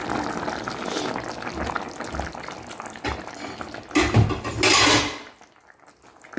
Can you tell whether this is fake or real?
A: real